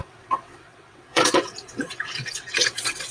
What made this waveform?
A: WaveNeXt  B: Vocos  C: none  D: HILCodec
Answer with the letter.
A